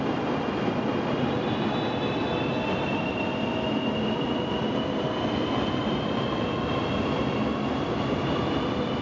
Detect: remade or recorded recorded